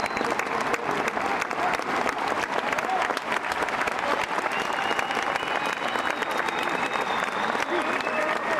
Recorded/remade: recorded